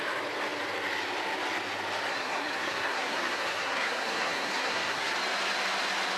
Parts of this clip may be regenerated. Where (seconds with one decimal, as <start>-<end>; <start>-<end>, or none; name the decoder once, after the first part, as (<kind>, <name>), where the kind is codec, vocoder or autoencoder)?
2.1-5.1 (codec, SNAC)

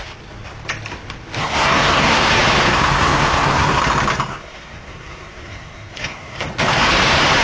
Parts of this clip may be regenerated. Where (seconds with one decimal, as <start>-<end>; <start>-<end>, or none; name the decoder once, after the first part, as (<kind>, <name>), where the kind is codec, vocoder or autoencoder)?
1.4-2.3 (codec, SNAC); 2.7-3.8; 4.3-6.5

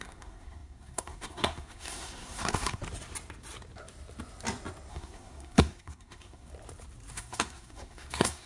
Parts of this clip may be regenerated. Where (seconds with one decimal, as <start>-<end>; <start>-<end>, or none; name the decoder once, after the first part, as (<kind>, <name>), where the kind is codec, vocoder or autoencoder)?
0.0-2.8 (codec, SNAC); 4.9-6.5; 7.1-8.5

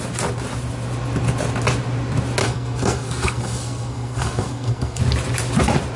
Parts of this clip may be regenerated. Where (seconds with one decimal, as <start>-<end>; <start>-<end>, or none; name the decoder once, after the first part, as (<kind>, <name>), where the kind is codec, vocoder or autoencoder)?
2.4-5.0 (codec, SNAC)

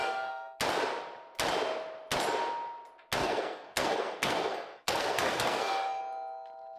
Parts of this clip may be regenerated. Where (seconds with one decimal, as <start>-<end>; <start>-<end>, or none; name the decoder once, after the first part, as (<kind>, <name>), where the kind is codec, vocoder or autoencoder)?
0.0-0.6 (codec, SNAC); 3.2-6.0

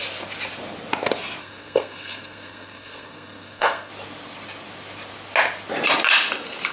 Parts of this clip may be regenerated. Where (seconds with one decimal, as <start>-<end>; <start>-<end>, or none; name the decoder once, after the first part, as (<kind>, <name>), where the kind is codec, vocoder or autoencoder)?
1.4-3.9 (codec, SNAC)

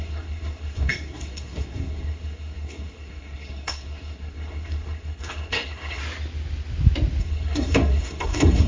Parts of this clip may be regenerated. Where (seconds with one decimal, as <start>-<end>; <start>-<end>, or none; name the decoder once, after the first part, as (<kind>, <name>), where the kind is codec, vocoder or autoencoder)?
0.0-6.0 (codec, SNAC); 7.2-8.7